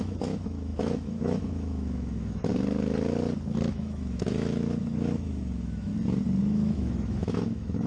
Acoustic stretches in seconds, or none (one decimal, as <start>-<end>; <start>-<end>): 2.5-3.7; 5.9-6.4